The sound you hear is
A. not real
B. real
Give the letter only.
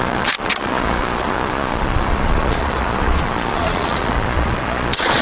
A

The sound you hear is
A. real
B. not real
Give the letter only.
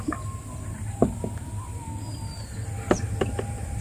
A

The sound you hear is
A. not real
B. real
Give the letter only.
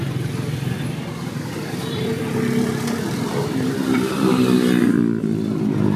A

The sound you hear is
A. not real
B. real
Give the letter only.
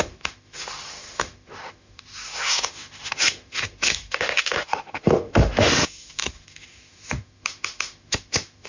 A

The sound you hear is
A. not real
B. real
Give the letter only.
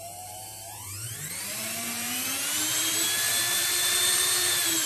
A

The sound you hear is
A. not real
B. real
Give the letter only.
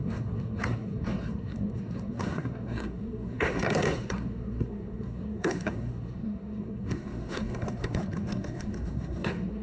A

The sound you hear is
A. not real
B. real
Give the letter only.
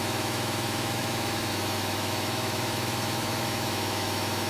A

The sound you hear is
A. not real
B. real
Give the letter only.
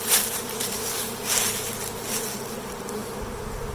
B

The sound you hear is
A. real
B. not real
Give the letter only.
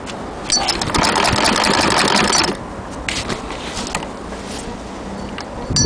A